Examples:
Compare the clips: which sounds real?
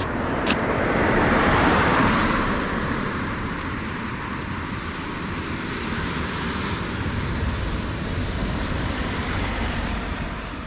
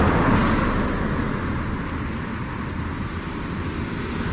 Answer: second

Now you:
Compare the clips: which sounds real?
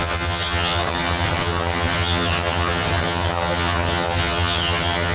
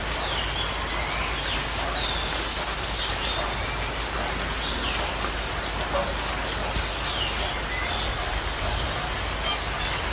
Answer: second